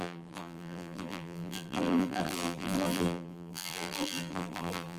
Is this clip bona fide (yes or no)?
no